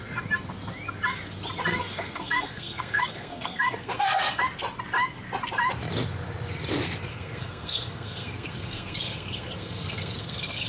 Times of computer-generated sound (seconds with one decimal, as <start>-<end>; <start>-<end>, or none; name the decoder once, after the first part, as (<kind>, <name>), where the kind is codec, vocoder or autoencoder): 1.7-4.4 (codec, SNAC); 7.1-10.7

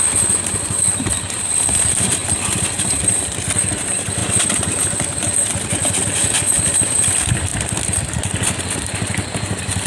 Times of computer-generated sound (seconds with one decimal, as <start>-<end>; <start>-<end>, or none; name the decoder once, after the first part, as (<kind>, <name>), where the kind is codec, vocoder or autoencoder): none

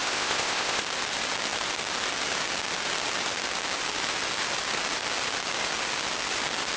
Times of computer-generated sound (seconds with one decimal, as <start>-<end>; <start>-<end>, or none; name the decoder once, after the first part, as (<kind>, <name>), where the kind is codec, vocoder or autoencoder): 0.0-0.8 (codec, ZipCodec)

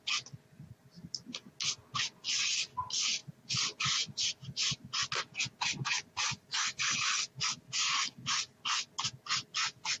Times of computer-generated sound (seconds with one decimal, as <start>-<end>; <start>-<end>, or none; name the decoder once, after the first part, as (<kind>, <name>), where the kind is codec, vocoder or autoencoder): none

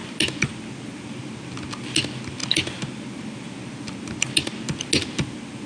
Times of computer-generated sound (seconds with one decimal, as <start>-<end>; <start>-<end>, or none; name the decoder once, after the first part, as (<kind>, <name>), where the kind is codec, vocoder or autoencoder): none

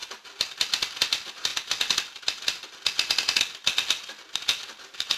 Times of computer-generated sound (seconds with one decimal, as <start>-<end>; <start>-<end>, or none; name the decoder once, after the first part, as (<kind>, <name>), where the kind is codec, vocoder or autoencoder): none

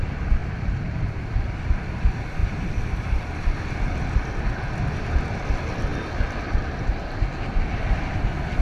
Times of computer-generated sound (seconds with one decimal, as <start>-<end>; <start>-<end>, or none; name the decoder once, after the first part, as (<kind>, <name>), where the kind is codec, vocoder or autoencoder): none

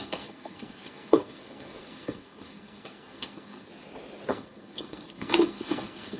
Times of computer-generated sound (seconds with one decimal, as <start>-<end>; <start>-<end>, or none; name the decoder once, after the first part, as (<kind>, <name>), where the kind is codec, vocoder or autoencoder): 0.0-3.7 (codec, SNAC); 4.3-6.2